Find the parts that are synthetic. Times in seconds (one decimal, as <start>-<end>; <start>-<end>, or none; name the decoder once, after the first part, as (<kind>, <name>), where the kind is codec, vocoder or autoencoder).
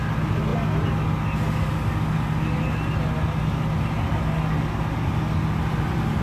none